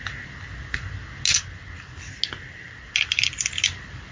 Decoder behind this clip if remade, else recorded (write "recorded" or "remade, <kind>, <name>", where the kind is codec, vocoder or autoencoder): recorded